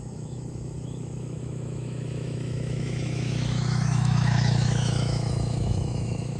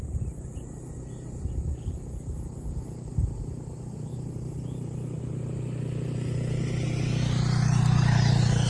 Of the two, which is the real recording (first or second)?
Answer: second